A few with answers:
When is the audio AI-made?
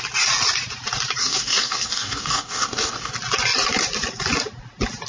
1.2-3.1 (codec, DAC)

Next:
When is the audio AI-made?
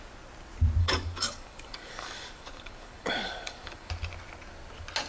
0.8-3.9 (codec, DAC)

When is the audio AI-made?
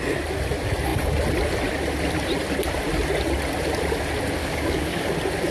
4.4-5.1 (codec, DAC)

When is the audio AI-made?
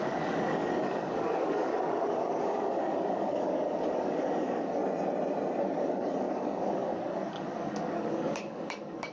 0.0-4.8 (codec, DAC); 5.6-9.1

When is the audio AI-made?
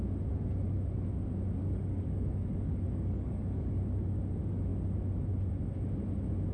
1.6-3.7 (codec, DAC)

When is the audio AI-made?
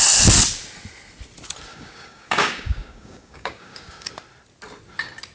1.7-4.1 (codec, DAC)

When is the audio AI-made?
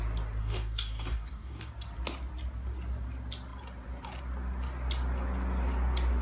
0.4-1.7 (codec, DAC)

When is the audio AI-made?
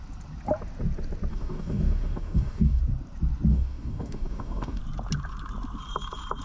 1.3-2.8 (codec, DAC); 3.5-4.8